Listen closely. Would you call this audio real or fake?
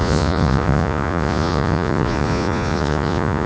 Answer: fake